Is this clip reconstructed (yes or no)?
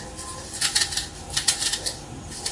no